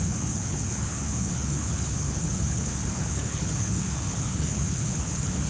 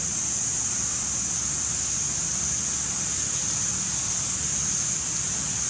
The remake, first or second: first